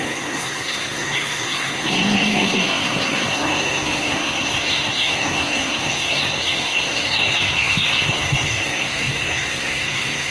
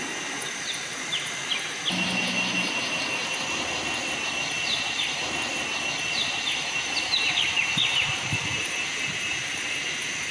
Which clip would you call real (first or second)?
second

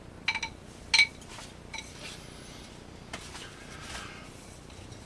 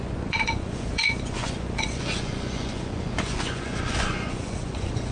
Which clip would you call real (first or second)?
first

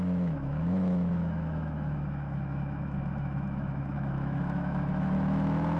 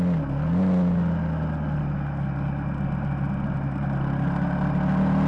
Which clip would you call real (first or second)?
second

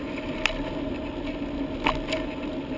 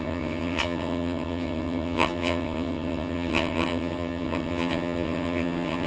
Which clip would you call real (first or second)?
first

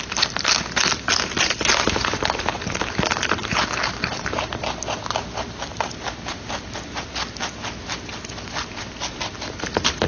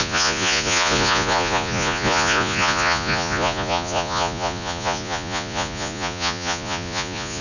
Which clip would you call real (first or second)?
first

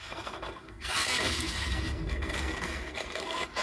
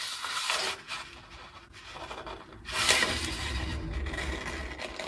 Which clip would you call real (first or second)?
second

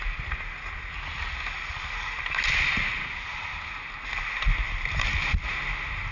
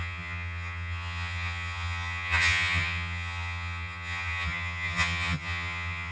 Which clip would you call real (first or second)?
first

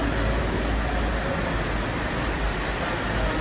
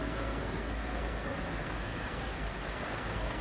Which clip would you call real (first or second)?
first